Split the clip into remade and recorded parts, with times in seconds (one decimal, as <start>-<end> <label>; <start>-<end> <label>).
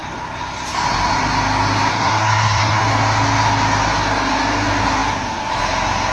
0.0-1.9 recorded; 1.9-2.8 remade; 2.8-6.1 recorded